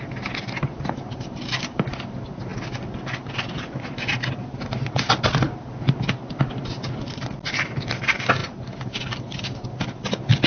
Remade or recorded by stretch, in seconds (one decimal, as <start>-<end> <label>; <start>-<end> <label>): 0.0-10.5 recorded